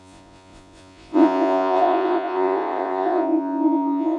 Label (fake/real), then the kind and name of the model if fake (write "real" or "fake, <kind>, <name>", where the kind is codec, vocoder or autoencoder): fake, vocoder, Vocos